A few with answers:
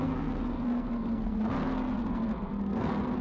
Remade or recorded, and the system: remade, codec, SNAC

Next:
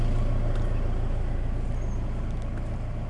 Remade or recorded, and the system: recorded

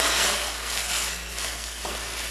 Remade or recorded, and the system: remade, codec, SNAC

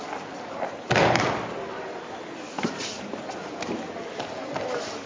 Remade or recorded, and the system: recorded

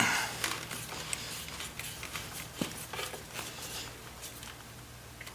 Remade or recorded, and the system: recorded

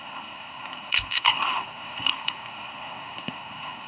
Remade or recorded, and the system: remade, codec, SNAC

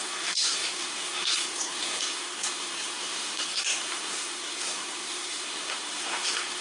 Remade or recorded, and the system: remade, codec, SNAC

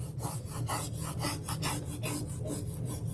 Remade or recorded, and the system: recorded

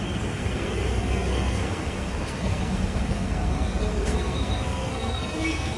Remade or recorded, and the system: remade, codec, SNAC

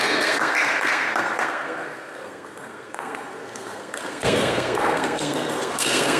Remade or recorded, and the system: remade, codec, SNAC